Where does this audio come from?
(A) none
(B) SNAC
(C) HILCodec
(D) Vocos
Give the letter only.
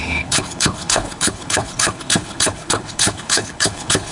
C